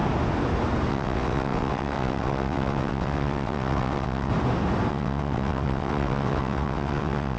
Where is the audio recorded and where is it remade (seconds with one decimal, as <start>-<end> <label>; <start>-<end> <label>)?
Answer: 0.0-0.9 recorded; 0.9-4.3 remade; 4.3-4.9 recorded; 4.9-7.4 remade